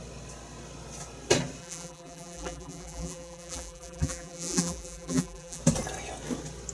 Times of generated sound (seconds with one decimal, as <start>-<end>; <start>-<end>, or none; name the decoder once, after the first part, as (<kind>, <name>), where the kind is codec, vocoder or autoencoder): 1.6-5.6 (vocoder, BigVGAN v2)